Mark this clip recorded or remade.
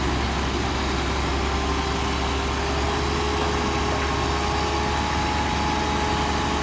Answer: recorded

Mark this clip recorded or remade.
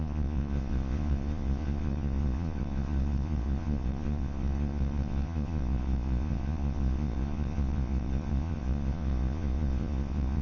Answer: remade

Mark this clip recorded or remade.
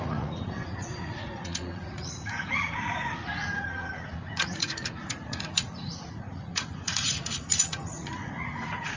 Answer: remade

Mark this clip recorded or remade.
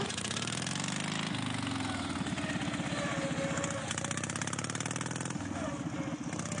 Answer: recorded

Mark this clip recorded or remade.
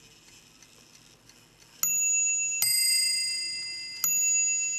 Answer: recorded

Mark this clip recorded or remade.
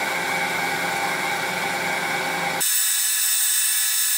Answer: recorded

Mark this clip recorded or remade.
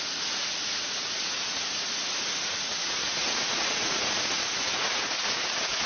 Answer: remade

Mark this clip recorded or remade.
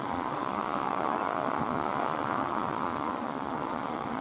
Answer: remade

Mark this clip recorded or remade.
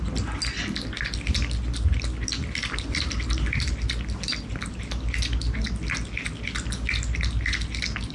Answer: recorded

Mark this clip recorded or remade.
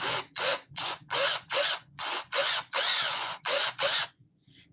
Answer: remade